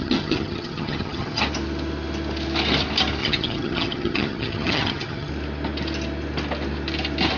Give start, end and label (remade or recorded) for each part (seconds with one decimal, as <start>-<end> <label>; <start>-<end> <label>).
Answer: 0.0-1.4 remade; 1.4-3.2 recorded; 3.2-5.3 remade; 5.3-7.4 recorded